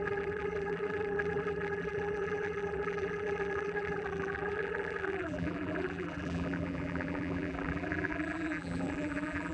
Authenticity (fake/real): fake